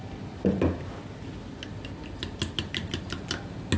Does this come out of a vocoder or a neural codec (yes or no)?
no